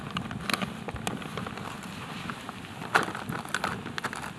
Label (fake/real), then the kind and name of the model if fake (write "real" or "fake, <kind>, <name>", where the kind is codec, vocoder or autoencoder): real